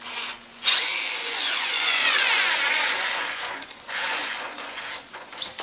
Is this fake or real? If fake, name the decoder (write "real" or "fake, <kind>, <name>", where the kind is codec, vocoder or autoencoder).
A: fake, vocoder, Vocos